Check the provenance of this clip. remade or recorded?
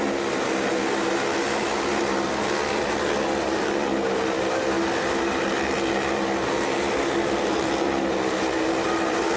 recorded